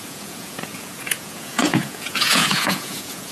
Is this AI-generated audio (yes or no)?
yes